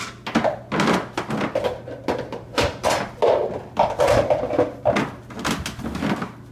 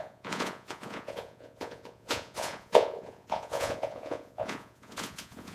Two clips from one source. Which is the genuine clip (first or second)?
first